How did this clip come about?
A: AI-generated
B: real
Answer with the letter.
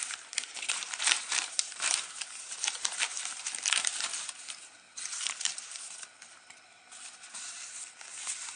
A